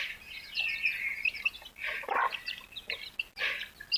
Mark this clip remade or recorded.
recorded